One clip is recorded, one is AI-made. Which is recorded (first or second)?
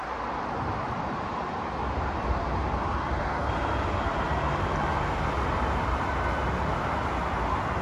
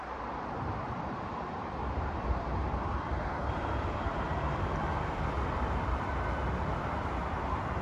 first